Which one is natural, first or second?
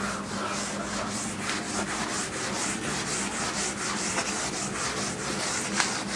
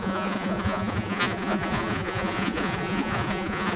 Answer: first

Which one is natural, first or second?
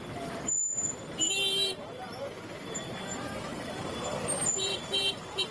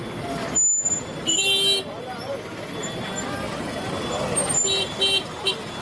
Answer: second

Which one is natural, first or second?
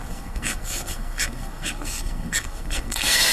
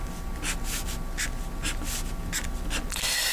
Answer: second